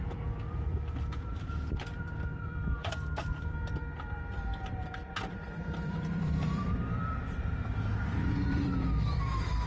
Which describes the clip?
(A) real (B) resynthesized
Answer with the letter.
B